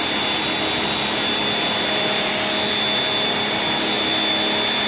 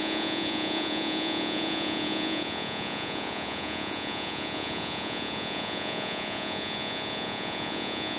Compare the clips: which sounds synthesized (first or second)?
second